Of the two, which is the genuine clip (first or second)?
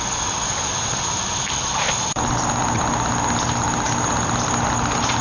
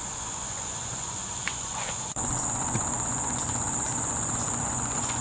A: first